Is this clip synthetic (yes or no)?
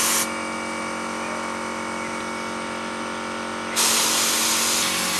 no